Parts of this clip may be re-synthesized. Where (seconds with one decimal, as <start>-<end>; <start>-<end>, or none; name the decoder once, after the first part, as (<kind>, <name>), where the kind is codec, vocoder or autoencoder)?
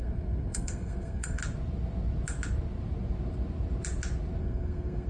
0.0-1.4 (codec, SNAC); 4.4-5.1